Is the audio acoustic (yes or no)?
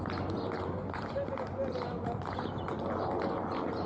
no